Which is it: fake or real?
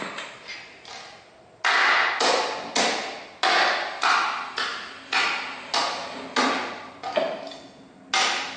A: real